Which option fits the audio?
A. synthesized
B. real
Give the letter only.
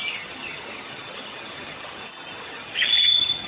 A